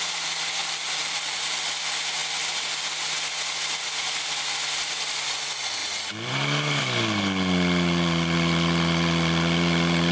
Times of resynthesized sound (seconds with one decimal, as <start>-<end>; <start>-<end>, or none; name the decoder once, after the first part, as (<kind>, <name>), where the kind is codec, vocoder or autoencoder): 0.6-1.8 (vocoder, BigVGAN v2); 2.2-2.8; 5.8-6.8